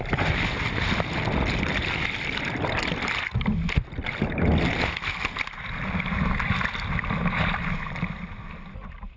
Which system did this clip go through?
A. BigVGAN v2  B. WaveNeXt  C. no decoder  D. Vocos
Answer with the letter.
C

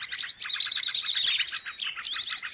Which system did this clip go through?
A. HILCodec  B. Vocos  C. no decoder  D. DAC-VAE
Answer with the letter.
C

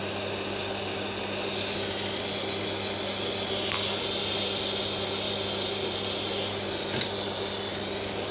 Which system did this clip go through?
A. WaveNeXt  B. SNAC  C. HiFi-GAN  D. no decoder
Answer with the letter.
D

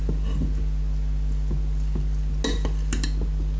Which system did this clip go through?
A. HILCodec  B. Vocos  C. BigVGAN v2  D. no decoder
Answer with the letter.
D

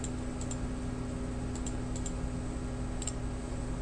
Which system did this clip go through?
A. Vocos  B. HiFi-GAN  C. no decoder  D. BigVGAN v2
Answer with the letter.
C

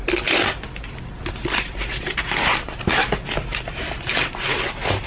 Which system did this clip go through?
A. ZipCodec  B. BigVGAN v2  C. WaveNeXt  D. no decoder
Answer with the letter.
D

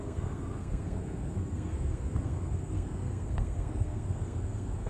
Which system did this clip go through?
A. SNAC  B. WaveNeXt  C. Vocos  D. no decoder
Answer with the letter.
A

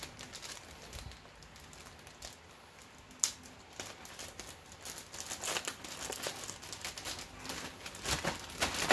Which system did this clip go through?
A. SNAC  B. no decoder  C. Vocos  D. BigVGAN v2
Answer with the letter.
B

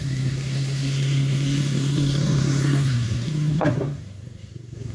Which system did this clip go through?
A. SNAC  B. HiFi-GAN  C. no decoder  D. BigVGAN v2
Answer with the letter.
A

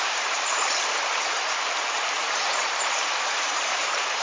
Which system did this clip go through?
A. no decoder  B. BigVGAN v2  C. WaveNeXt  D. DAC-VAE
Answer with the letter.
B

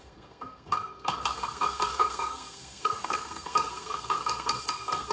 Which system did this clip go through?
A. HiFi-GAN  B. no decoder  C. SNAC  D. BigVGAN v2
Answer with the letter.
C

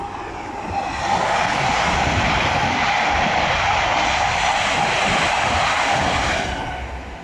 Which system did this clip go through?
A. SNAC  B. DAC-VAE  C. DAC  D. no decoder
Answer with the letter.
D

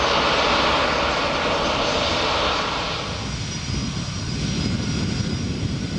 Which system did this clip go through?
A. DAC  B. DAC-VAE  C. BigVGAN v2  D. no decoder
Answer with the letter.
D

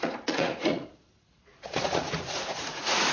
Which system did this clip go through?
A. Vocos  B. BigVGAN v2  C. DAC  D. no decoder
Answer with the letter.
A